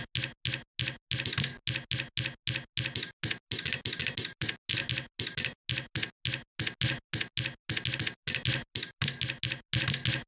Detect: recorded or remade recorded